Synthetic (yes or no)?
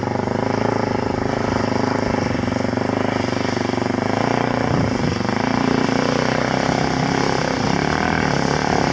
no